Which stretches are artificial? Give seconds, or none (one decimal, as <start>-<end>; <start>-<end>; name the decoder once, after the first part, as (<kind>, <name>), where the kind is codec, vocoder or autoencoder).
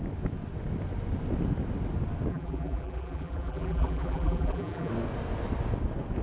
2.3-4.9 (vocoder, BigVGAN v2)